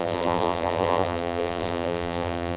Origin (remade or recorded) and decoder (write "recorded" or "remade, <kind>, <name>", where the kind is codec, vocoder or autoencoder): remade, vocoder, BigVGAN v2